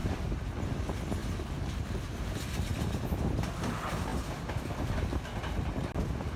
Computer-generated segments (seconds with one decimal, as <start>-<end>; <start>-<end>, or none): 0.0-0.5; 1.2-1.8